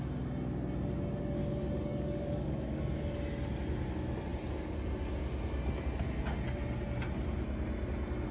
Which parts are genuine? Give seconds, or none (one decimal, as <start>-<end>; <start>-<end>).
0.0-1.4; 2.8-8.3